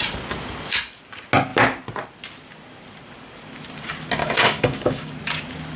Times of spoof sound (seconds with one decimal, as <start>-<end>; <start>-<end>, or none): 4.2-5.1